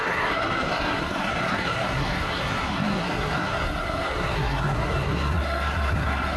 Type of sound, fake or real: fake